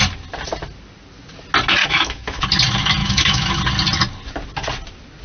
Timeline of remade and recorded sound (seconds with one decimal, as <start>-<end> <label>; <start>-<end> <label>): 0.0-1.8 recorded; 1.8-2.4 remade; 2.4-3.0 recorded; 3.0-3.6 remade; 3.6-5.2 recorded